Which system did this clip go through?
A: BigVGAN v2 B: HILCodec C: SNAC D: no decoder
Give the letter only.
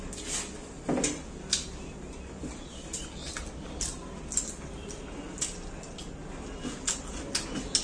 D